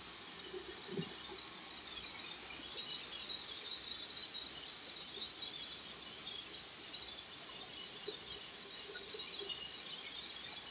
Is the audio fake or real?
real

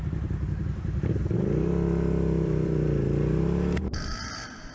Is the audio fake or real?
fake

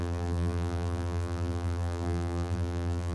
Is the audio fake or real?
fake